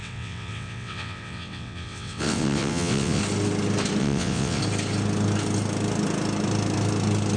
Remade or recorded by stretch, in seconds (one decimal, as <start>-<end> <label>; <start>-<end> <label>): 0.0-3.2 remade; 3.2-4.0 recorded; 4.0-4.6 remade; 4.6-7.4 recorded